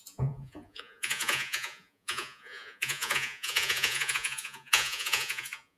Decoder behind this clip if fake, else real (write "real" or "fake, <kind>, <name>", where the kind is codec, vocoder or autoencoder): fake, vocoder, Vocos